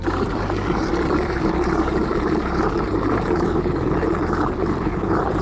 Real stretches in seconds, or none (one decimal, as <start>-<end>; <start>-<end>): none